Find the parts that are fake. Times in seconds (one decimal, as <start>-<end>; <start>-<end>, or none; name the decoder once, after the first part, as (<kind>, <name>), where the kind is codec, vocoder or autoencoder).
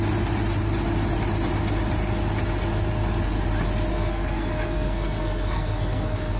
3.9-6.4 (codec, SNAC)